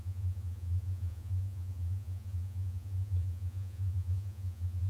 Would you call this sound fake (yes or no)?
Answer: yes